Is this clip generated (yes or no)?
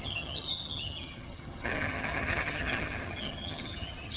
yes